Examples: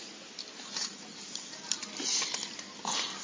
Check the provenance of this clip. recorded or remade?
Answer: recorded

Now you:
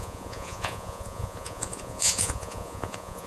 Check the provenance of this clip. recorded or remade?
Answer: remade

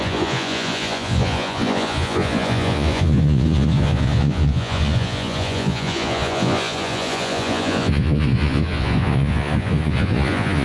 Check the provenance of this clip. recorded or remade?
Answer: remade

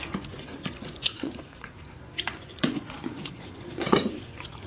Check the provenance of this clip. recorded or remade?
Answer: remade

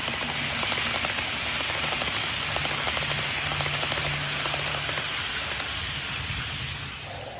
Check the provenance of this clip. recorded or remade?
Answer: recorded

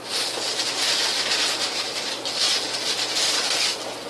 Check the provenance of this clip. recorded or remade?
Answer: recorded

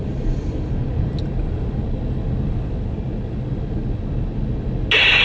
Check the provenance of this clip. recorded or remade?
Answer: recorded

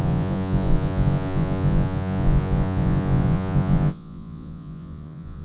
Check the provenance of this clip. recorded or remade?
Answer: remade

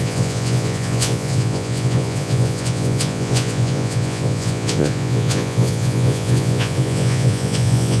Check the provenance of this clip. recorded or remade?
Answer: remade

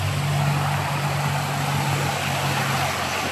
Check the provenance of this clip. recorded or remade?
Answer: recorded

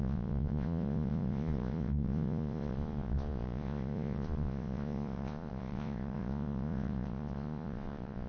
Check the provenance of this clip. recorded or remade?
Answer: remade